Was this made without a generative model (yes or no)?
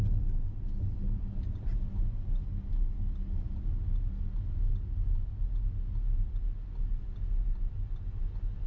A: yes